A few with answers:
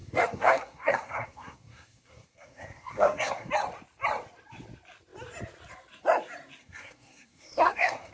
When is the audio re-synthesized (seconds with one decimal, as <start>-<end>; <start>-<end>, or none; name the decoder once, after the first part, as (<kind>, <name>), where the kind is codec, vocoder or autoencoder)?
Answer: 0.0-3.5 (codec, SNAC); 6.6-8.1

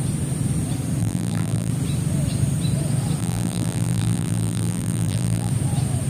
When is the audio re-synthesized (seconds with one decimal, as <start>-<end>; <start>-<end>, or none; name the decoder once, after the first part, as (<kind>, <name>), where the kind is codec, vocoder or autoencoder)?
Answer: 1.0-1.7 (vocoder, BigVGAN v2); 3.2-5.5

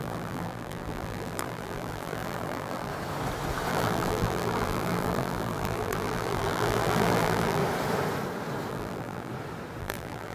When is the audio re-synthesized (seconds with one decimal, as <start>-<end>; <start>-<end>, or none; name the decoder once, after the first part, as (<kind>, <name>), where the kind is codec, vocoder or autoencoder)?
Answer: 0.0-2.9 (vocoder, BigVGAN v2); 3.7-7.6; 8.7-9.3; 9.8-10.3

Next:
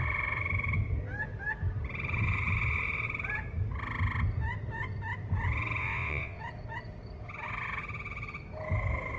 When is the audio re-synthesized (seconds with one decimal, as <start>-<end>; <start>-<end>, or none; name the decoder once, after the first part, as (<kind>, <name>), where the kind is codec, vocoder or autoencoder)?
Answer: 5.8-6.4 (vocoder, WaveNeXt)

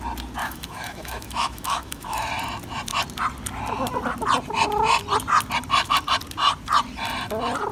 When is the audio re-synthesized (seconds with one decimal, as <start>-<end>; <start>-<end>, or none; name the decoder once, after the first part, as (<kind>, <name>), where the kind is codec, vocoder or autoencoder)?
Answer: 0.4-2.3 (autoencoder, DAC-VAE)